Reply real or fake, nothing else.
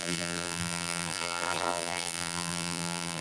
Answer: fake